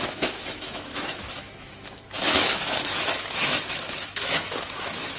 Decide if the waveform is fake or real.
fake